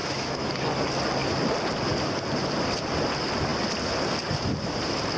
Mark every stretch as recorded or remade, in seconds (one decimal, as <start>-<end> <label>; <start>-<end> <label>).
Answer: 0.0-0.5 remade; 0.5-5.2 recorded